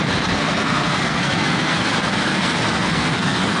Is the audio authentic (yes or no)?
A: no